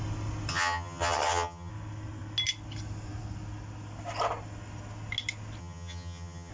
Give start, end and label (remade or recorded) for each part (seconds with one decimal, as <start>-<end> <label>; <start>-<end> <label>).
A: 0.0-0.5 recorded; 0.5-1.7 remade; 1.7-5.6 recorded; 5.6-6.5 remade